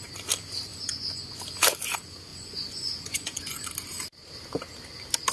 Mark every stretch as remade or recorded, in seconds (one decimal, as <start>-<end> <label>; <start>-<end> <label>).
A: 0.0-0.7 recorded; 0.7-1.4 remade; 1.4-2.3 recorded; 2.3-3.7 remade; 3.7-5.3 recorded